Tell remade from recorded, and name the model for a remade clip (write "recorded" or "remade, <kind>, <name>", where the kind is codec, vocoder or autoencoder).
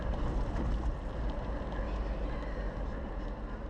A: recorded